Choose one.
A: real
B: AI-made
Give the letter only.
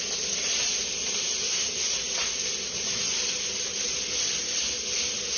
A